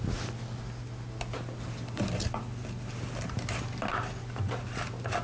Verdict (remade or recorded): recorded